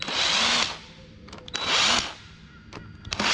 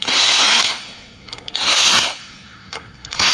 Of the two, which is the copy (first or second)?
second